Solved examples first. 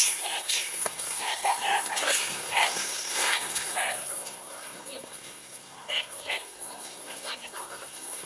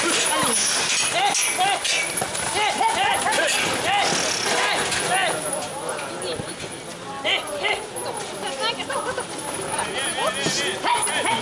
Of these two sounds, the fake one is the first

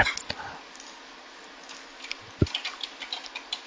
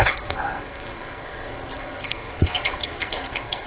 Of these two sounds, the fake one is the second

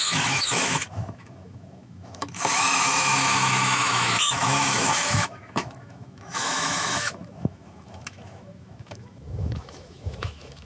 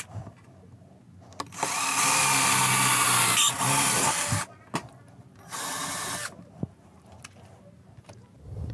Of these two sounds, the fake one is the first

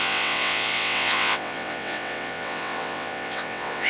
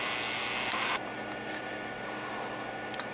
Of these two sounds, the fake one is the first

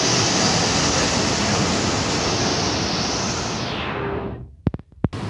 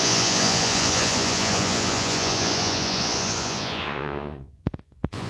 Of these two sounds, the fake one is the second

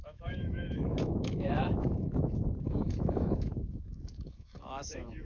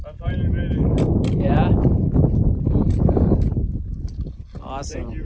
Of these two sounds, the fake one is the first